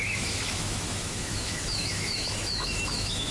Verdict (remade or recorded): remade